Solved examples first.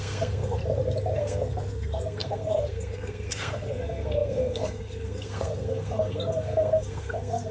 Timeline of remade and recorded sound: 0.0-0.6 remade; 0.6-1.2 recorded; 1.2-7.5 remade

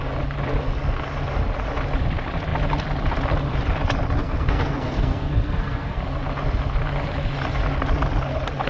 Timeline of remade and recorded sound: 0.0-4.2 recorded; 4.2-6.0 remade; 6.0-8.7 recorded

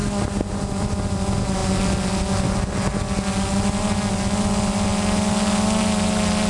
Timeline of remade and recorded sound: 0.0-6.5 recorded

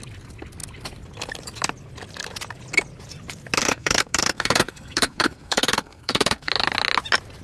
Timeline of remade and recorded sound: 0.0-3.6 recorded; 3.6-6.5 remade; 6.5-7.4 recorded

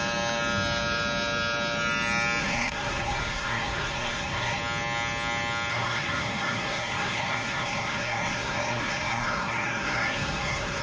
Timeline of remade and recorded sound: 0.0-2.4 recorded; 2.4-4.6 remade; 4.6-5.7 recorded; 5.7-10.8 remade

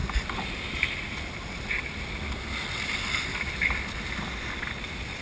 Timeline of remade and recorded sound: 0.0-5.2 recorded

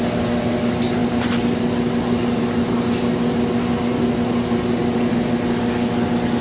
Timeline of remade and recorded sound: 0.0-6.4 recorded